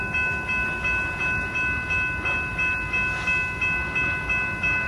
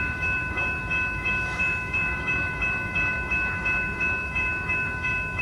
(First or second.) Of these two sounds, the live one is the first